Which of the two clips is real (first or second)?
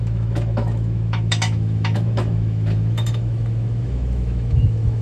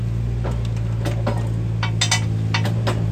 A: second